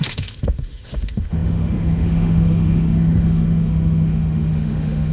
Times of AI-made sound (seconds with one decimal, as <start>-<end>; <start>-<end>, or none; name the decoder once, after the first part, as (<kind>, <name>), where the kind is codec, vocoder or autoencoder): 0.0-5.1 (autoencoder, DAC-VAE)